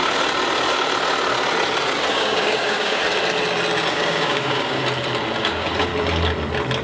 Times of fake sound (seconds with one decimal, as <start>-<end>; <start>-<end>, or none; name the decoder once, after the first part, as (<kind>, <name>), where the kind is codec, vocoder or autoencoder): 2.1-3.0 (codec, DAC); 3.9-4.8; 5.4-5.9